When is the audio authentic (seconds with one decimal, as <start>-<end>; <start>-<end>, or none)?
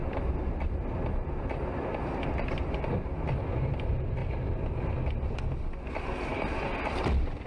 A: 0.0-6.3; 7.1-7.5